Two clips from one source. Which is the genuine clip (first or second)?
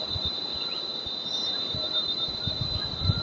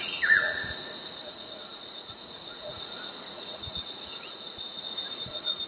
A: first